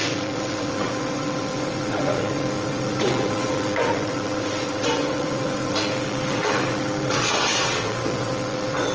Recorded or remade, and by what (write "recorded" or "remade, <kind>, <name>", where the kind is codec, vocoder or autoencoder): remade, vocoder, WaveNeXt